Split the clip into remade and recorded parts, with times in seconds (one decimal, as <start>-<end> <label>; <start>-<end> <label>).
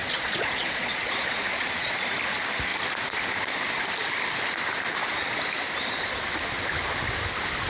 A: 0.0-1.9 remade; 1.9-7.7 recorded